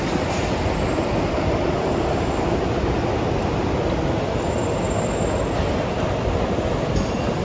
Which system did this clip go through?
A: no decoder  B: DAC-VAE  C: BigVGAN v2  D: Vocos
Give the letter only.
A